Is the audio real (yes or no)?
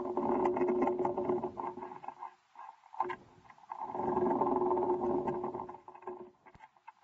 yes